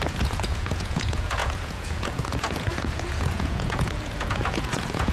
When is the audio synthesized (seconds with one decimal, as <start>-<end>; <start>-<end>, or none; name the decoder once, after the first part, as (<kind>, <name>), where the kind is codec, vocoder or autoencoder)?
0.0-5.1 (vocoder, Vocos)